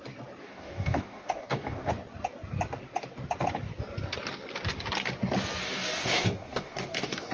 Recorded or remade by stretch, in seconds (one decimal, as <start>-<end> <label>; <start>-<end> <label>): 0.0-0.4 recorded; 0.4-1.9 remade; 1.9-5.6 recorded; 5.6-7.3 remade